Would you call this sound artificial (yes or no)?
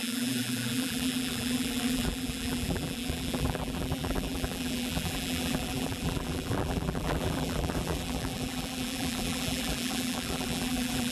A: yes